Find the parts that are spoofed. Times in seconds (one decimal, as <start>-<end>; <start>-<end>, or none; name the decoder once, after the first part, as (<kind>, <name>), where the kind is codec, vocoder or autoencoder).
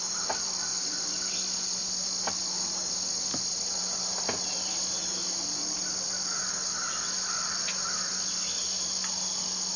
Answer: none